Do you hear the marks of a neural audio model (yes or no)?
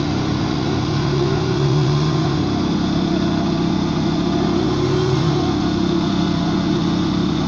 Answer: yes